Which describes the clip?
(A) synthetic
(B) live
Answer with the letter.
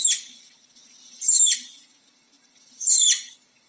B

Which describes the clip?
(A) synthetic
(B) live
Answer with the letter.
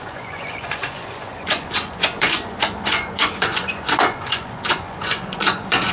A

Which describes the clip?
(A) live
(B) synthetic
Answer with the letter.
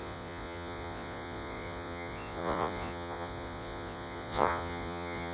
B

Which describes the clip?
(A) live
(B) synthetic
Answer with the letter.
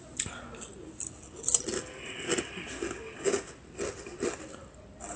A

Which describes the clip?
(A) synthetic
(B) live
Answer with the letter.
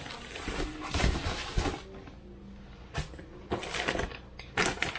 B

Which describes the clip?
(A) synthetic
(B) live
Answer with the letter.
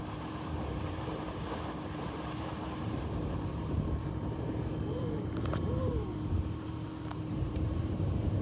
A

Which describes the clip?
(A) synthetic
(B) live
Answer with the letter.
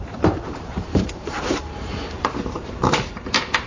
A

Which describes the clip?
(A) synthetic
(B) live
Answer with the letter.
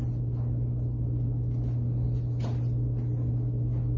B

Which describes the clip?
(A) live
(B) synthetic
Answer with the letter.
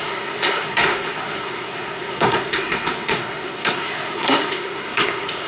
B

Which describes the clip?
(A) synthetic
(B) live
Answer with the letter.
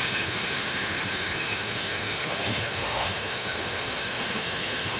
A